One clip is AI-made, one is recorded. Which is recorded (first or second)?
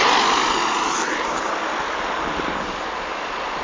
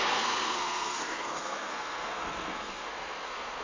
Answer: first